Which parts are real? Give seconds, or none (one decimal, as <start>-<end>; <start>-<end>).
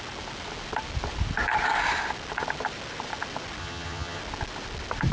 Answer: 0.0-3.6; 4.2-5.1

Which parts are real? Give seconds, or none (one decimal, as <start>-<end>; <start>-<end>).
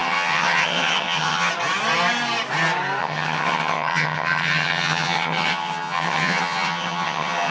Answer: 1.5-3.0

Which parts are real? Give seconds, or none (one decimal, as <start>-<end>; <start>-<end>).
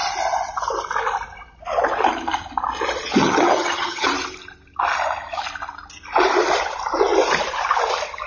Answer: 0.0-3.2; 4.1-8.3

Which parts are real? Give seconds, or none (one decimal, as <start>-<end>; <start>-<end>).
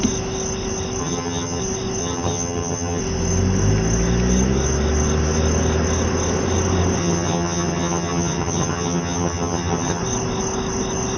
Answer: 0.0-1.0; 1.6-2.0; 3.0-7.0; 10.0-11.2